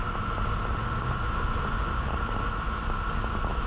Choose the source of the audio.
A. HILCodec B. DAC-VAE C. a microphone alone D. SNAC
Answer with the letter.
C